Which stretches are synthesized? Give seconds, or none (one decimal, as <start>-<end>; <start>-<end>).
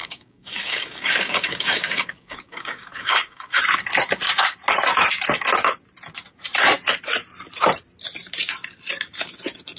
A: 0.0-3.6